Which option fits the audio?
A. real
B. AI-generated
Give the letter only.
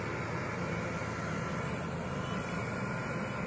B